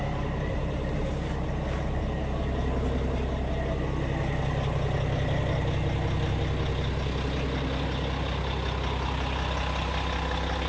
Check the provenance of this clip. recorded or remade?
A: recorded